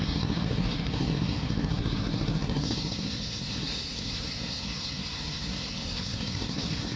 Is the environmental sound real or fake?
fake